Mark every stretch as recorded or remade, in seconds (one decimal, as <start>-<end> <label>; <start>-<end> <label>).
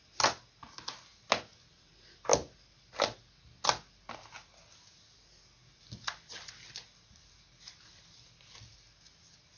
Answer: 0.0-9.6 recorded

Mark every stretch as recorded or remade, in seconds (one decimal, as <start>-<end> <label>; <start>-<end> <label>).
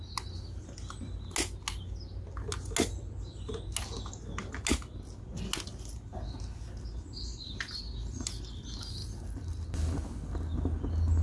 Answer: 0.0-11.2 recorded